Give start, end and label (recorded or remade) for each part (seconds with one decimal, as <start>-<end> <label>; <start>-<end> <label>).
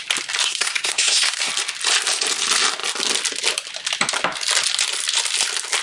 0.0-0.4 recorded; 0.4-1.5 remade; 1.5-5.8 recorded